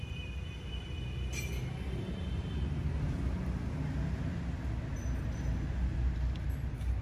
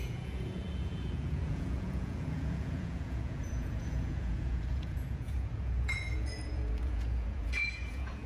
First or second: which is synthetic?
second